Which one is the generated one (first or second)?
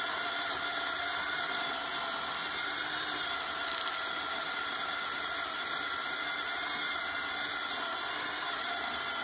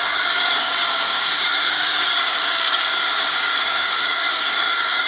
second